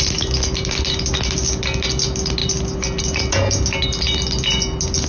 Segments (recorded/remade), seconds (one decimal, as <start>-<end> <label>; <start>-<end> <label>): 0.0-5.1 recorded